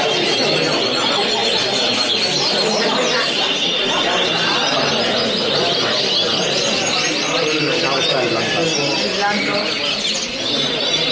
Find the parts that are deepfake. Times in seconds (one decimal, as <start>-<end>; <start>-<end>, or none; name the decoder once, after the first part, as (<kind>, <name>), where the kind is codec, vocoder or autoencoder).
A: none